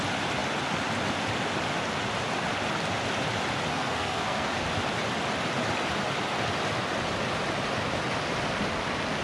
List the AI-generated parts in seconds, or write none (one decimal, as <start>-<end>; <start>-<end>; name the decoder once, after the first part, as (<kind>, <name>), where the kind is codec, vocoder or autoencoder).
3.7-4.5 (codec, SNAC)